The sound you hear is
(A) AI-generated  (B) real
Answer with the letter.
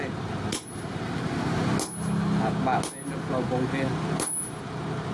B